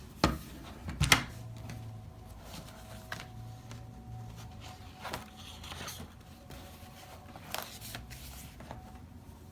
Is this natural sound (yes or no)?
yes